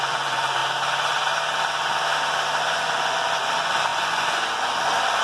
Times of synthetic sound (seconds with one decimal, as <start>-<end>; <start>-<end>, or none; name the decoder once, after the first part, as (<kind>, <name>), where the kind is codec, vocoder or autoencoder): 0.0-0.6 (vocoder, Vocos); 2.6-5.2